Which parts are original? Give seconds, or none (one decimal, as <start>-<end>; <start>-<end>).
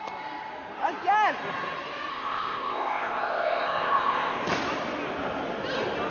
0.0-2.1; 4.4-6.1